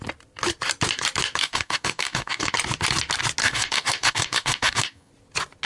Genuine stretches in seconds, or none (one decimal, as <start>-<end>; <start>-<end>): 0.0-1.4; 2.5-3.4; 5.1-5.6